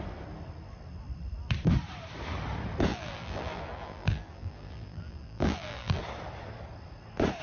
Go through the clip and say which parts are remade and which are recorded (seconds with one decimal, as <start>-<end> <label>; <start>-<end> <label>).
0.0-2.9 recorded; 2.9-6.0 remade; 6.0-7.4 recorded